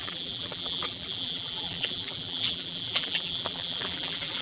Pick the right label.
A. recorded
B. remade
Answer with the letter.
B